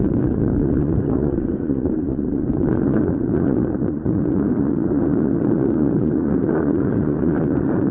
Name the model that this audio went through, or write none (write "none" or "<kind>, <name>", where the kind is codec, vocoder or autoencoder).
vocoder, Vocos